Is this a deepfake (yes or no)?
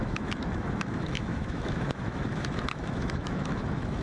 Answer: yes